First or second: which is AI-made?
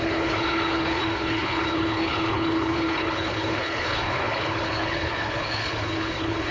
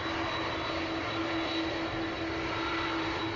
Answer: first